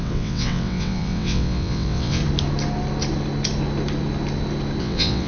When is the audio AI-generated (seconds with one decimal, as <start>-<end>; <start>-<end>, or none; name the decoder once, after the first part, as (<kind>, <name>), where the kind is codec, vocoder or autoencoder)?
0.0-2.2 (vocoder, WaveNeXt); 4.8-5.3